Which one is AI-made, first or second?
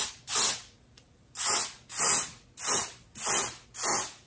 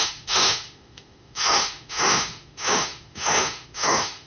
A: second